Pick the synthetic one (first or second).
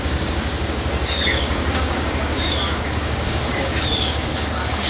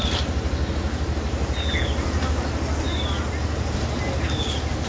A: first